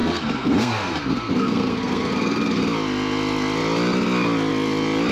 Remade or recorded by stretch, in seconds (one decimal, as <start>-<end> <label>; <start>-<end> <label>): 0.0-2.6 remade; 2.6-5.1 recorded